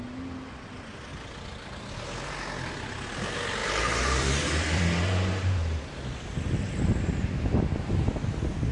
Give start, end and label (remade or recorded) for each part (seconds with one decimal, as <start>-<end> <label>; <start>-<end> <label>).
0.0-3.6 recorded; 3.6-5.8 remade; 5.8-8.7 recorded